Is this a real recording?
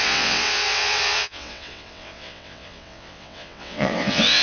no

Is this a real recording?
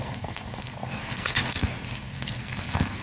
no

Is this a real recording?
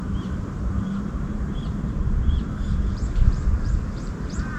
no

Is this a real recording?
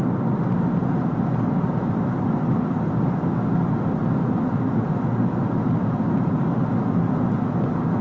yes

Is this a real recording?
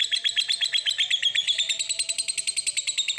yes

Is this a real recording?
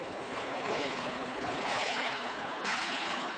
no